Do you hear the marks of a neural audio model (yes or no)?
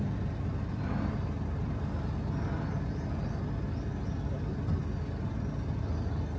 no